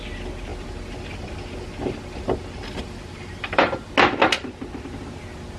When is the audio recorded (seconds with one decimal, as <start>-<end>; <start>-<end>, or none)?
0.0-0.5; 3.9-5.6

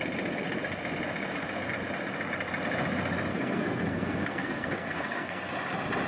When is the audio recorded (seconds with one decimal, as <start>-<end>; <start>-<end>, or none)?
0.0-3.3; 5.5-6.1

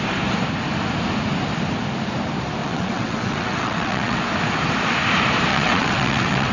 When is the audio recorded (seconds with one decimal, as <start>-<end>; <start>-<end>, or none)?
0.0-2.6; 4.2-5.5

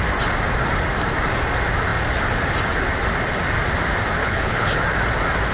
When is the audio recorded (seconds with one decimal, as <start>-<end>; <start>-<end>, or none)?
0.0-4.2; 4.8-5.5

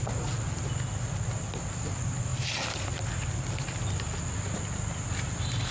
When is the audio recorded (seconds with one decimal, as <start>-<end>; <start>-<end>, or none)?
0.0-5.7

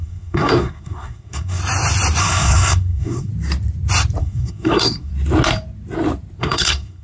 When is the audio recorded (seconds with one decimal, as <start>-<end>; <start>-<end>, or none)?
1.6-2.2; 3.3-4.2; 5.1-6.4